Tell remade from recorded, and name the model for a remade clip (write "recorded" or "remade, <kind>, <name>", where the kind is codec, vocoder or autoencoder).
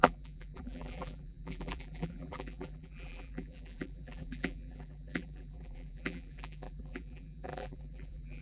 remade, vocoder, BigVGAN v2